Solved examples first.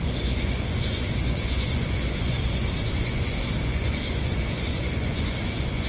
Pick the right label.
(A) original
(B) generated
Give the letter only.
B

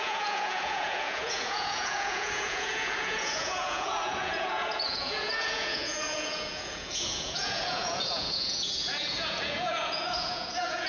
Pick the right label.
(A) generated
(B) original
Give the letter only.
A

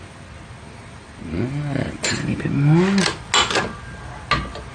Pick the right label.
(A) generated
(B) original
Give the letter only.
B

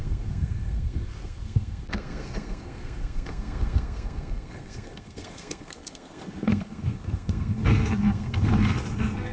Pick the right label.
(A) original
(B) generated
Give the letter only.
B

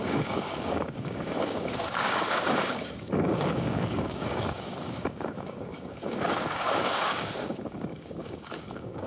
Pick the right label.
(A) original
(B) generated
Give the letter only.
B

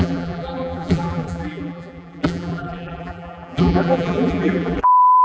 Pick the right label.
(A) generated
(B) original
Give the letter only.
A